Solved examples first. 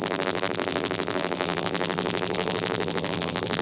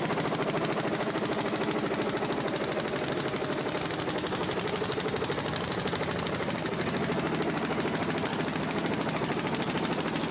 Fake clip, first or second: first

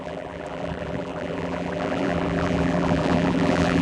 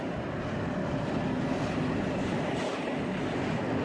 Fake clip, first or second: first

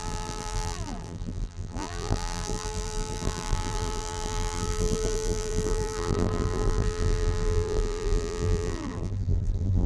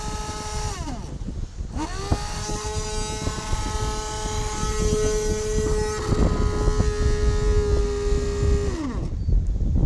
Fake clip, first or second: first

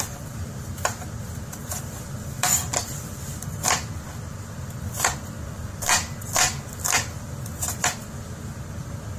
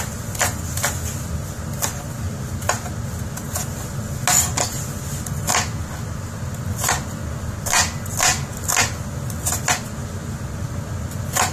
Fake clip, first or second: first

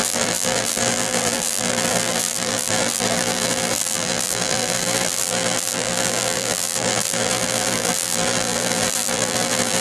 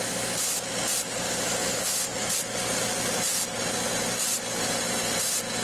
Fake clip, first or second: first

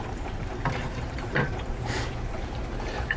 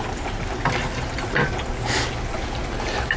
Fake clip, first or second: first